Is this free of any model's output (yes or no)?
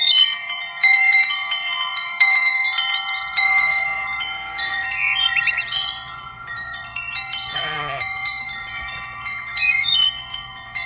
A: no